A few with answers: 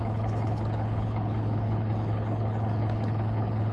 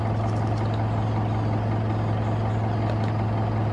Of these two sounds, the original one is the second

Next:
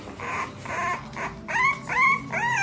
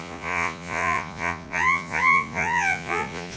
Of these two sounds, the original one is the first